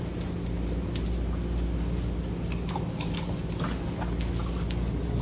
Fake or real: real